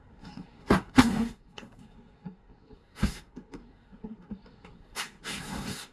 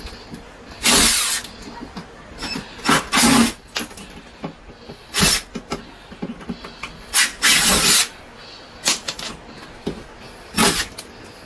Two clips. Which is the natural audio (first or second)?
second